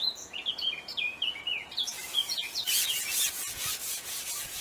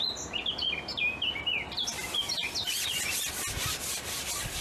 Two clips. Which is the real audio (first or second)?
second